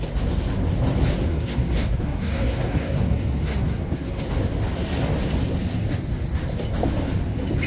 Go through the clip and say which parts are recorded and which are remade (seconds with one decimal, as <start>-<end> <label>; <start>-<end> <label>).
0.0-1.3 recorded; 1.3-4.3 remade; 4.3-7.7 recorded